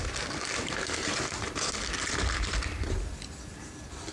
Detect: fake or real real